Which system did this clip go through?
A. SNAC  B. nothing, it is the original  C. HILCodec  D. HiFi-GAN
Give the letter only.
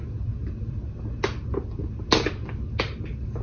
B